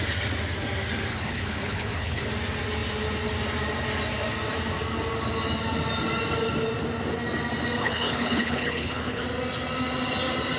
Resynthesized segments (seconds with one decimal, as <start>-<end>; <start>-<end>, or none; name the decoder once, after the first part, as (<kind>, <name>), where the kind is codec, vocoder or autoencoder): 1.1-2.3 (codec, HILCodec); 7.8-9.2